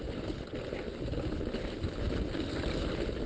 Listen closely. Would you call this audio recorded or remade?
recorded